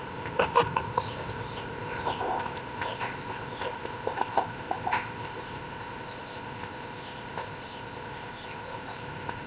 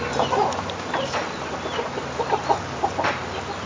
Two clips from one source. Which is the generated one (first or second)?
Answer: first